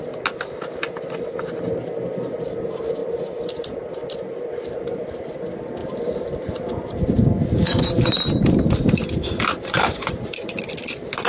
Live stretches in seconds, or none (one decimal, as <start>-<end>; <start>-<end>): 0.0-5.8; 10.6-11.3